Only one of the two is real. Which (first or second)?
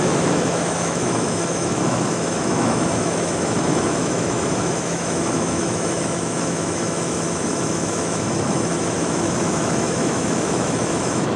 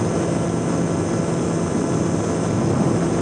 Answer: second